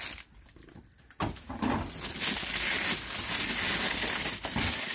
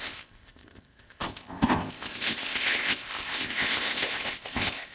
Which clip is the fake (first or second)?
second